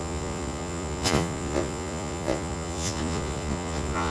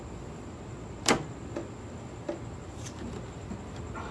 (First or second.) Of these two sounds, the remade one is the first